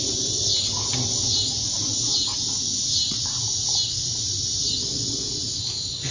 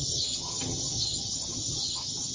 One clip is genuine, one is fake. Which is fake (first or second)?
second